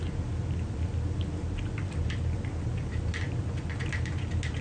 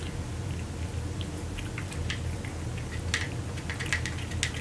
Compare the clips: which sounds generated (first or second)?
first